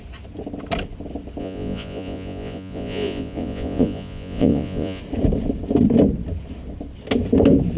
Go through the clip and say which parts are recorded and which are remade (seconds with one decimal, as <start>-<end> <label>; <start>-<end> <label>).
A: 0.0-1.4 recorded; 1.4-5.0 remade; 5.0-7.8 recorded